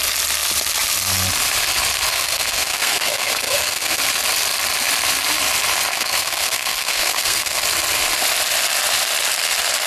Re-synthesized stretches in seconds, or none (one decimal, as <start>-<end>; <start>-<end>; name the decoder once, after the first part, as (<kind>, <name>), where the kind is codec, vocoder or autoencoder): 2.1-4.0 (codec, SNAC); 5.9-7.6

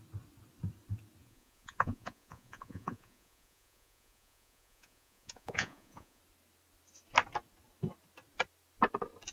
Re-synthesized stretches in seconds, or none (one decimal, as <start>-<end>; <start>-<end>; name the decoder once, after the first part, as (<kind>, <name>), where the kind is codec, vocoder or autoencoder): 1.2-6.2 (vocoder, Vocos)